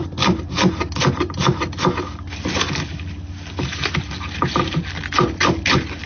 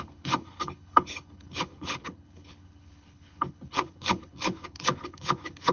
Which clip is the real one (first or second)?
first